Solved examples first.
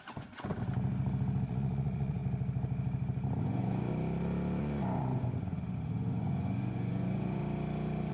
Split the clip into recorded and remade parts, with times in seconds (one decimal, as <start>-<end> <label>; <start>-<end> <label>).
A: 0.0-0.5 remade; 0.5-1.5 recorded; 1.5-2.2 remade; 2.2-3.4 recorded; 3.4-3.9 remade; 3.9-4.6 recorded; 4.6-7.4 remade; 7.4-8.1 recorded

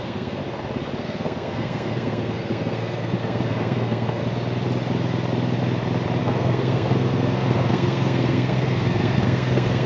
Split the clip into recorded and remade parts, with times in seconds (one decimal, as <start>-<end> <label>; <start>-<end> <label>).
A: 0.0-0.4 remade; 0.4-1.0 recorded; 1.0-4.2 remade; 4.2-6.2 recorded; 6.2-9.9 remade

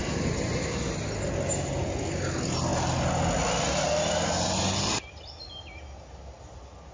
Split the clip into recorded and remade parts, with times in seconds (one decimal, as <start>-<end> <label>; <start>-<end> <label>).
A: 0.0-6.9 recorded

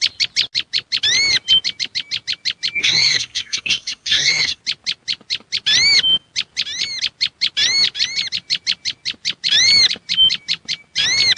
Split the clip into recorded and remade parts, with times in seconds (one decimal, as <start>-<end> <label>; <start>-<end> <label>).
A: 0.0-2.8 recorded; 2.8-4.6 remade; 4.6-11.4 recorded